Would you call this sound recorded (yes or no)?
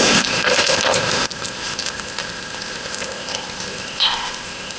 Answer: no